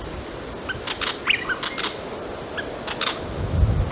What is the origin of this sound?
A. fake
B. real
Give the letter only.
B